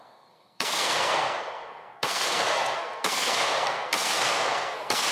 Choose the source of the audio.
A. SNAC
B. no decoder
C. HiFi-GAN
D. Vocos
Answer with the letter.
A